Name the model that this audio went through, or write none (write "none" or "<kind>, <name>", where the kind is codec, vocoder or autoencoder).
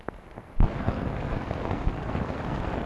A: codec, SNAC